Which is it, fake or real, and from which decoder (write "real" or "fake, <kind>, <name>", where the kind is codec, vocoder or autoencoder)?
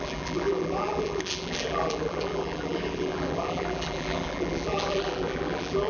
fake, vocoder, BigVGAN v2